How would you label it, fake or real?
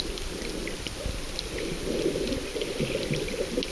real